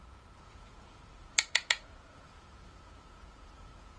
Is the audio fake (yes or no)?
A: yes